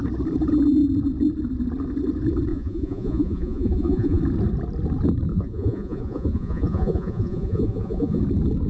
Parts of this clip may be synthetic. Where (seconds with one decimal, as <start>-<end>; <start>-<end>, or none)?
2.5-4.2; 5.3-8.2